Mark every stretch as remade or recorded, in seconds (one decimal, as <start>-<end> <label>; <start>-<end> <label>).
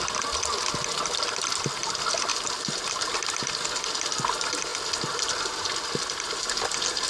0.0-7.1 recorded